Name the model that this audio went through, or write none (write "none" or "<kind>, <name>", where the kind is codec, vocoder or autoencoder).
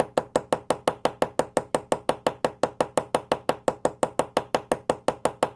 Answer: none